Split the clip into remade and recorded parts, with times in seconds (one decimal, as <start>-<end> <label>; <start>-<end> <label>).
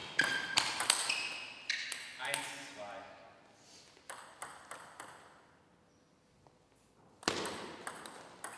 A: 0.0-8.6 recorded